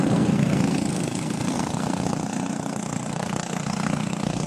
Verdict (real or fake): fake